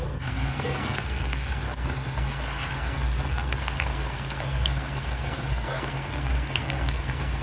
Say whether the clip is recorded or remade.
remade